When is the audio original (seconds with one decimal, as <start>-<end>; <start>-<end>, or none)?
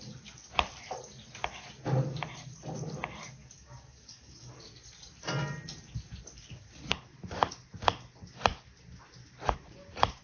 0.0-3.4; 4.6-10.2